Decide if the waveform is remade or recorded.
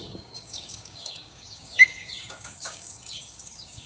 remade